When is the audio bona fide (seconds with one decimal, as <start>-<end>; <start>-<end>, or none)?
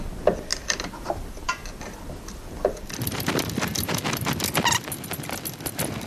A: 0.0-0.5; 4.0-6.1